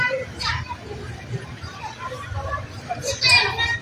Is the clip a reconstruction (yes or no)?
yes